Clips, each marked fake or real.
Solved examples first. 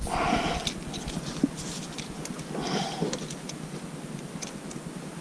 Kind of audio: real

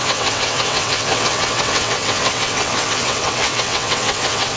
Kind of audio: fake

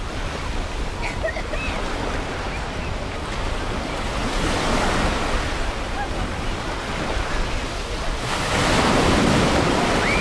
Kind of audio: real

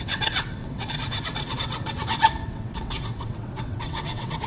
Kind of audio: fake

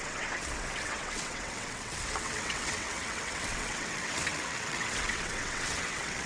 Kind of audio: fake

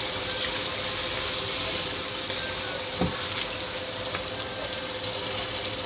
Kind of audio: real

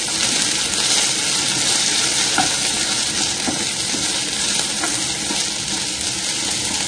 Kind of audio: real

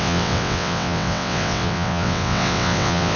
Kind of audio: fake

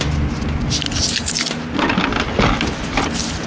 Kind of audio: real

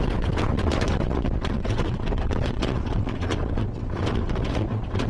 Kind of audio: fake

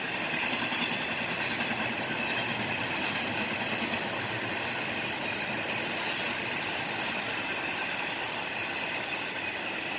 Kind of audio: real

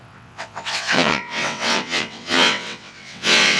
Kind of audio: fake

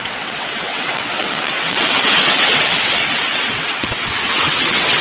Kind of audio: fake